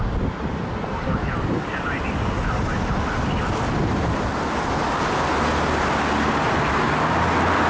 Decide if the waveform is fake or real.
real